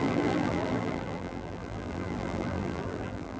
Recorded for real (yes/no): no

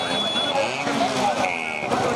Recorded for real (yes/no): yes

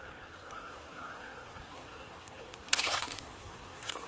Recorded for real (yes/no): no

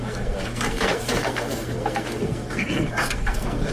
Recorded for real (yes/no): no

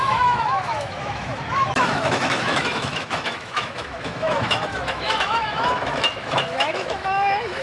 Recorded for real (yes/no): no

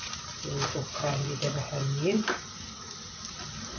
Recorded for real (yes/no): yes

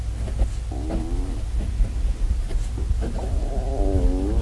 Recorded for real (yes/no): yes